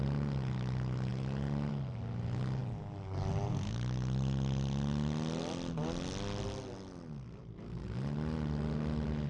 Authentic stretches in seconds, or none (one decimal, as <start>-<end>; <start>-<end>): 0.0-9.3